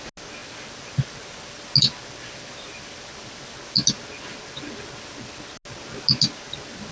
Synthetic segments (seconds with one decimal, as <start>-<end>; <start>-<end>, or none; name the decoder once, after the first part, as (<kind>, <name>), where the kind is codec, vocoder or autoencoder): none